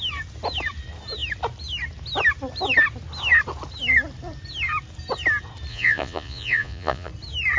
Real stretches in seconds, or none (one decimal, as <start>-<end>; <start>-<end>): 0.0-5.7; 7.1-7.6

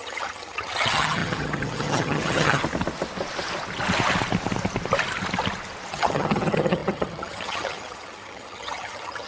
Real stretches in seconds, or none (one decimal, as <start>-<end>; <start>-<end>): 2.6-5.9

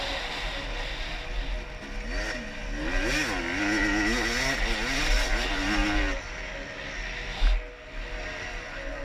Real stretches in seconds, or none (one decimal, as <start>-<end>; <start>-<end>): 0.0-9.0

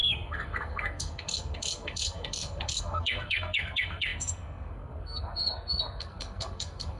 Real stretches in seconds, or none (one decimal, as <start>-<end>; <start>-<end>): none